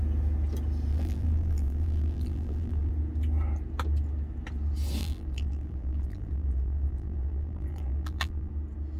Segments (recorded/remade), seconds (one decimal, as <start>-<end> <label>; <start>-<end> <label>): 0.0-0.9 recorded; 0.9-2.9 remade; 2.9-5.0 recorded; 5.0-8.5 remade; 8.5-9.0 recorded